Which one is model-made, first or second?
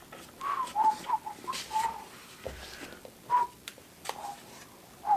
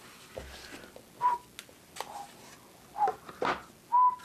first